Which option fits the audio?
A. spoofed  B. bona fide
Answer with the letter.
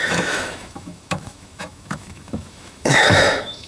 A